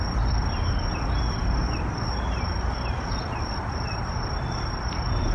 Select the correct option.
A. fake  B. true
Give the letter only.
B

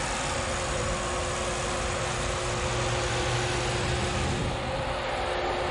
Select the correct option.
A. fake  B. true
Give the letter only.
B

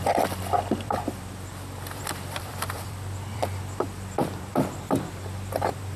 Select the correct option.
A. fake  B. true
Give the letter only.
A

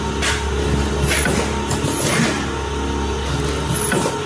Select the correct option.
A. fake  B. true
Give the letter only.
B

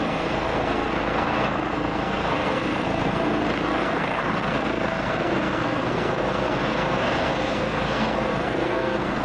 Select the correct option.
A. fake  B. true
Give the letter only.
A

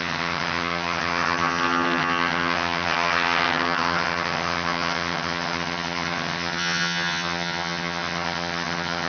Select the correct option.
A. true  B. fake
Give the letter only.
B